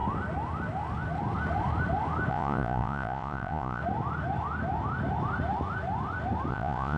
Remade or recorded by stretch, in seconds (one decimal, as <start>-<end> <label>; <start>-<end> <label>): 0.0-2.3 recorded; 2.3-3.8 remade; 3.8-6.5 recorded; 6.5-7.0 remade